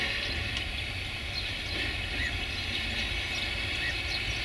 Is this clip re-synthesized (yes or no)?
no